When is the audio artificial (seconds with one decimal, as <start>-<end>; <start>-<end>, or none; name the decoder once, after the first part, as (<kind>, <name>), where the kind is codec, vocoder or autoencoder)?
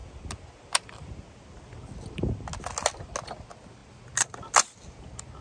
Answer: none